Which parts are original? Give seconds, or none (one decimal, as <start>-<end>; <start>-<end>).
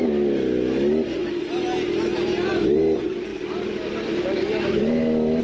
0.0-5.4